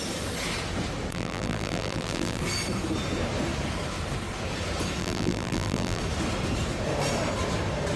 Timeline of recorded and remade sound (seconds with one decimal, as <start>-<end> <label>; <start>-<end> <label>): 0.0-1.1 recorded; 1.1-2.4 remade; 2.4-5.0 recorded; 5.0-6.0 remade; 6.0-8.0 recorded